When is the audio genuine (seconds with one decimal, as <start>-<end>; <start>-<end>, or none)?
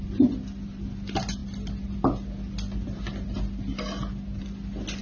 0.0-5.0